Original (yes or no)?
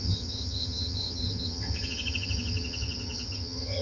no